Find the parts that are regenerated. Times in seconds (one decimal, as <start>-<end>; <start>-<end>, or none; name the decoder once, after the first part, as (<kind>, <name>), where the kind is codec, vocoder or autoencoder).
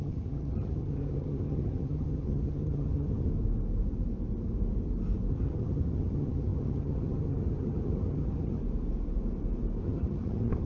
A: 0.0-3.3 (vocoder, HiFi-GAN); 5.3-8.6; 9.8-10.7